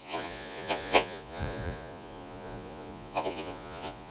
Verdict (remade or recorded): remade